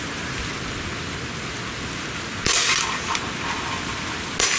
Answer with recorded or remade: recorded